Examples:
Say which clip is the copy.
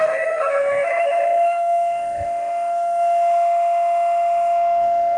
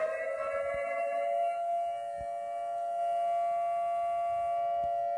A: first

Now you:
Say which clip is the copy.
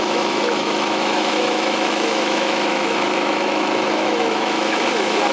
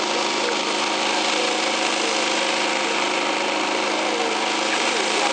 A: first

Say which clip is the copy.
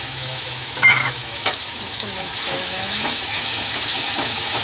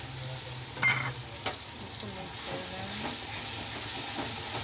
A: first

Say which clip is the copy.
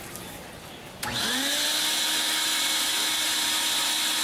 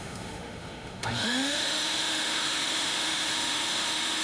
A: second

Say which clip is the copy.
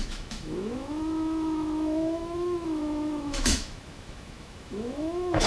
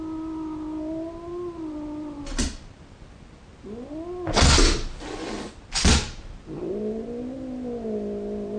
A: first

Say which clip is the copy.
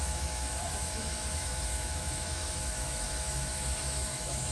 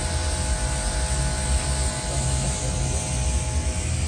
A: first